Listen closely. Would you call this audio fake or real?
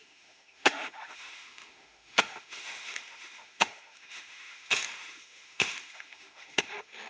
fake